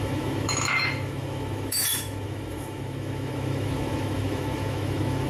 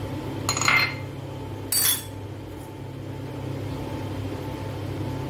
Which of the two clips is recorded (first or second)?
second